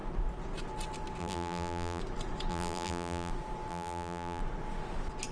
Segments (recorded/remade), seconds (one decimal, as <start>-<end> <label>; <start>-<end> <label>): 0.0-1.2 recorded; 1.2-2.0 remade; 2.0-2.5 recorded; 2.5-3.3 remade; 3.3-3.7 recorded; 3.7-4.4 remade; 4.4-5.3 recorded